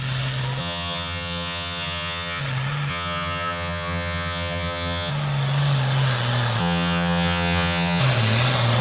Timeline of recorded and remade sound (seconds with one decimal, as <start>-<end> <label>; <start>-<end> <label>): 0.0-0.6 recorded; 0.6-2.4 remade; 2.4-2.9 recorded; 2.9-5.1 remade; 5.1-6.6 recorded; 6.6-8.0 remade; 8.0-8.8 recorded